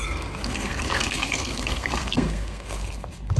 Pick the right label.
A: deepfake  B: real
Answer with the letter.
A